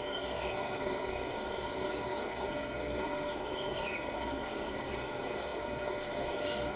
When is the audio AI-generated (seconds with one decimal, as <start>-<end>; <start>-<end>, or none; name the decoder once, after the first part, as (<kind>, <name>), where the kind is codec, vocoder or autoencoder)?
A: 0.0-6.8 (codec, SNAC)